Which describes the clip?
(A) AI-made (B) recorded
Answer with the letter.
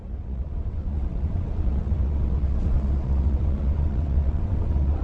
A